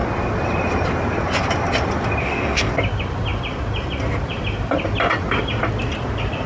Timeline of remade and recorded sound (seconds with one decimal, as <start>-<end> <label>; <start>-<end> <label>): 0.0-2.2 recorded; 2.2-2.7 remade; 2.7-6.5 recorded